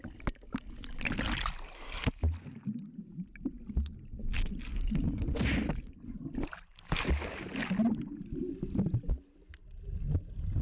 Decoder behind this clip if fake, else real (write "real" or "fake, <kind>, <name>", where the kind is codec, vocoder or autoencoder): real